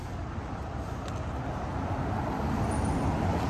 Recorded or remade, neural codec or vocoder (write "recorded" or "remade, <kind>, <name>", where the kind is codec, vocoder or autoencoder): recorded